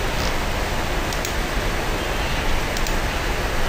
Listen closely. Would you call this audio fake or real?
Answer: real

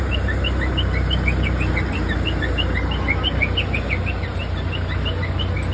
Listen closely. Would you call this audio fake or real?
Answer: real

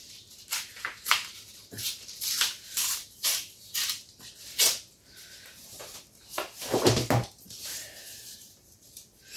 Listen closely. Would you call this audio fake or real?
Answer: fake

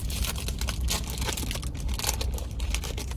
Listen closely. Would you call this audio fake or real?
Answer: real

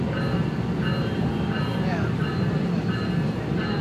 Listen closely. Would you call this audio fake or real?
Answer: real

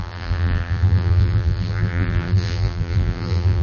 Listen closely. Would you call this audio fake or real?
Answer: fake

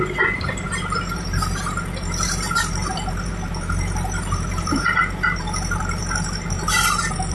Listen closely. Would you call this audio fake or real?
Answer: fake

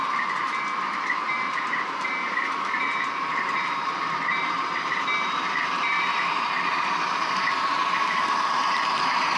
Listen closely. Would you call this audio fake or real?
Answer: fake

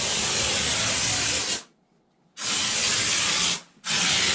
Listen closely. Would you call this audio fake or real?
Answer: real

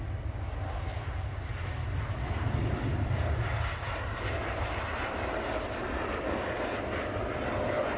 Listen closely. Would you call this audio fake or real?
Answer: real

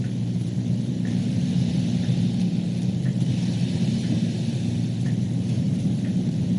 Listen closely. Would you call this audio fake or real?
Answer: fake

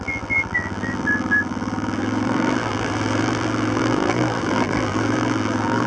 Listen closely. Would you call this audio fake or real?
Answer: fake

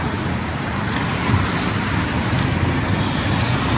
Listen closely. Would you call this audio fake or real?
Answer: real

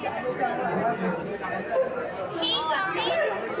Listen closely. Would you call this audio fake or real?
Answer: real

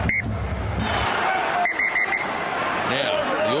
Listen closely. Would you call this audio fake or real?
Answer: real